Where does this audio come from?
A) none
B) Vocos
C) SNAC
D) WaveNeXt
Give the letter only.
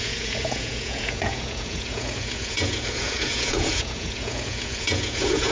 B